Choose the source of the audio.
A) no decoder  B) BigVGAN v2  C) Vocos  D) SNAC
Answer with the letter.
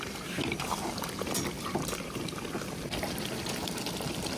A